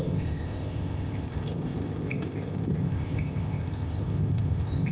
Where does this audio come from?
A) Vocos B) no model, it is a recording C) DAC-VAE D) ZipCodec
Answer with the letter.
D